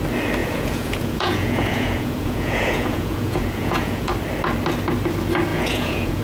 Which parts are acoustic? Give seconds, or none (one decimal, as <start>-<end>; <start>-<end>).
0.0-0.4; 4.1-5.5